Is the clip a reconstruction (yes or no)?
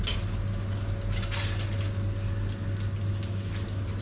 no